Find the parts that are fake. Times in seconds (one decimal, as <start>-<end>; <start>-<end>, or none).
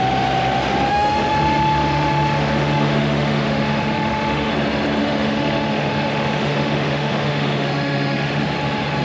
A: 0.9-4.5; 5.0-8.4